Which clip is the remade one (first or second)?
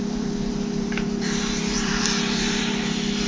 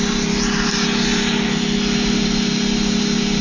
first